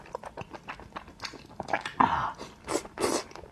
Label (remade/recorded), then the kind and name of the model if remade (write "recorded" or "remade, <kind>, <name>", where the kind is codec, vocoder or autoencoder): recorded